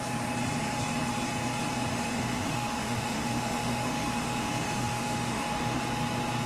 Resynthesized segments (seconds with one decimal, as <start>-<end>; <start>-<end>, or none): 1.9-5.8